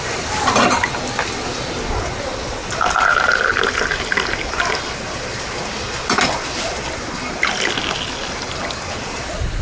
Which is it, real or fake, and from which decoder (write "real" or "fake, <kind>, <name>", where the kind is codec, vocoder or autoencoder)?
real